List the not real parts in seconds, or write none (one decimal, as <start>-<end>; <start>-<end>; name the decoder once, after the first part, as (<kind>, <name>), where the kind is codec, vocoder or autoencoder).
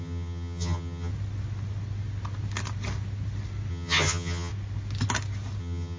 0.0-1.1 (vocoder, HiFi-GAN); 3.7-4.5; 5.6-6.0